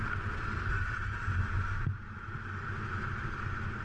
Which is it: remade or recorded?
recorded